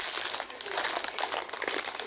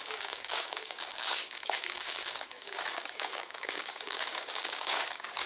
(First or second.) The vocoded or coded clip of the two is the second